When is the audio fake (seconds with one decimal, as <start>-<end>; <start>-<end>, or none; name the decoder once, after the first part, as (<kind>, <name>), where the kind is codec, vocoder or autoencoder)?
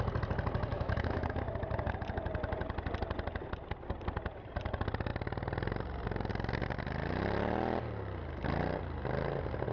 0.7-1.4 (autoencoder, DAC-VAE)